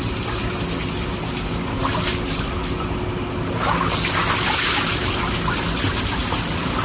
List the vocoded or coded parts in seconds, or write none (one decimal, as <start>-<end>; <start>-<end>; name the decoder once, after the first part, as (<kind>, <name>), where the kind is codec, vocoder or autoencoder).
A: none